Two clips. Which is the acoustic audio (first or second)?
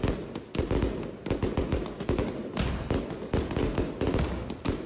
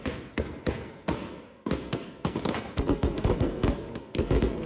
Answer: first